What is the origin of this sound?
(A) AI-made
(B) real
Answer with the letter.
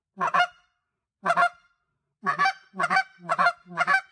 B